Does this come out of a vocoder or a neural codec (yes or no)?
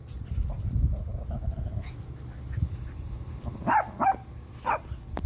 no